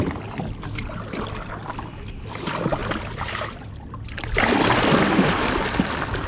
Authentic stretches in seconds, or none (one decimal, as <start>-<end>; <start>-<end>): 0.0-6.3